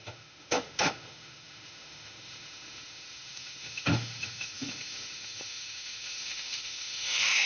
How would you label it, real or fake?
fake